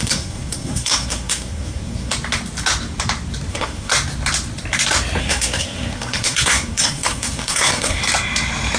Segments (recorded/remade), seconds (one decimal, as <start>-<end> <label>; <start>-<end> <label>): 0.0-2.1 remade; 2.1-3.5 recorded; 3.5-3.9 remade; 3.9-5.2 recorded; 5.2-8.0 remade; 8.0-8.8 recorded